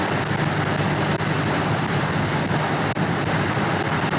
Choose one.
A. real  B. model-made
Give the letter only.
A